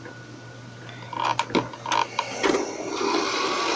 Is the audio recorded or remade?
recorded